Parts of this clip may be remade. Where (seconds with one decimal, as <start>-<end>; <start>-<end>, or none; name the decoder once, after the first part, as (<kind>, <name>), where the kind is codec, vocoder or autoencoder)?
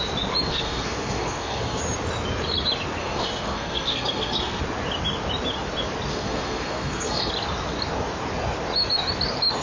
0.5-1.8 (codec, SNAC); 3.0-4.6; 6.1-7.3